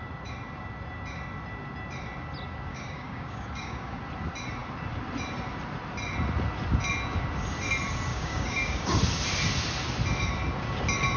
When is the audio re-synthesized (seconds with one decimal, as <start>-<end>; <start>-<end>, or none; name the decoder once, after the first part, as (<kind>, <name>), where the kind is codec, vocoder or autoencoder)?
2.7-4.0 (codec, DAC); 8.1-9.0